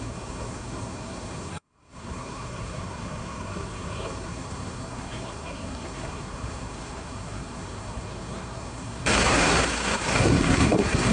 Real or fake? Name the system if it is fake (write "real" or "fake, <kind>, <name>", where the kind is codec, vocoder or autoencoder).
fake, codec, SNAC